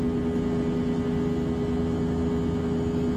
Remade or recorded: recorded